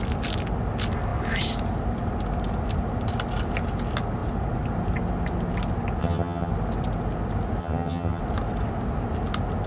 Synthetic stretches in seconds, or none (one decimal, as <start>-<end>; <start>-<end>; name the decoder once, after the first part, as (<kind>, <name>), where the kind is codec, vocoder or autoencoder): 6.0-6.5 (vocoder, HiFi-GAN); 7.6-8.2